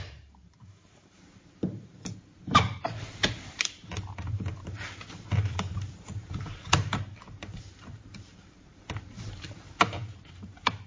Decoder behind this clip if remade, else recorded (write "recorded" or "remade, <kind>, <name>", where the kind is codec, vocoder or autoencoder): remade, vocoder, BigVGAN v2